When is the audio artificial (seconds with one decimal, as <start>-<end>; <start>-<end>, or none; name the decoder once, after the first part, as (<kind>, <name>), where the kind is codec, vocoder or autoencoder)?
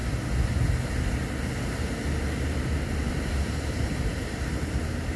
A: 3.1-5.2 (vocoder, BigVGAN v2)